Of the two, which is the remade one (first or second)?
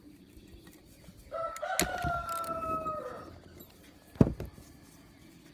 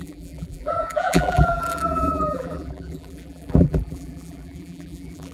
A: second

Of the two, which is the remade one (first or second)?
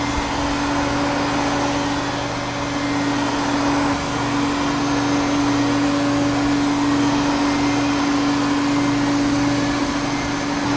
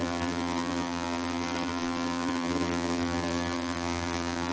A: second